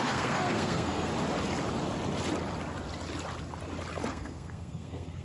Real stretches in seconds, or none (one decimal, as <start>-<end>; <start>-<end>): 1.1-4.1